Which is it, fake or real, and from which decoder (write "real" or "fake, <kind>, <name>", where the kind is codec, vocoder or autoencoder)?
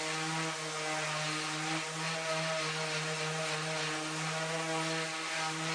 real